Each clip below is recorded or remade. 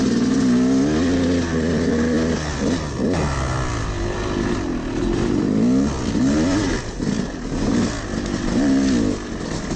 recorded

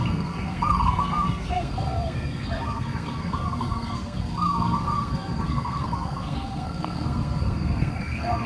remade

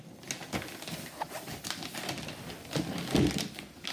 recorded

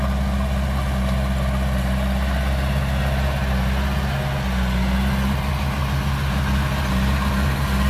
recorded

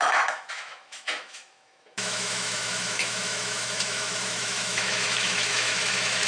remade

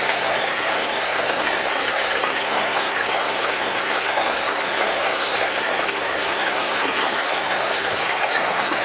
remade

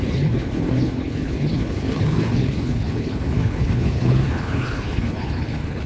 remade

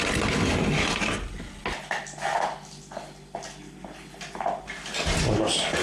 recorded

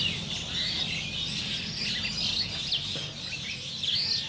recorded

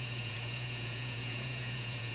remade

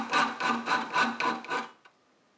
recorded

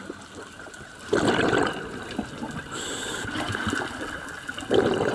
recorded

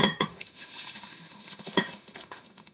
remade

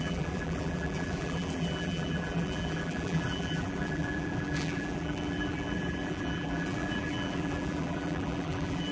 remade